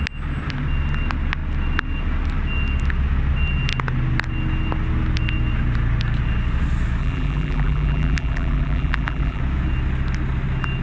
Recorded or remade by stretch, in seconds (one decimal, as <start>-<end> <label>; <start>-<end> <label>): 0.0-7.0 recorded; 7.0-9.4 remade; 9.4-10.8 recorded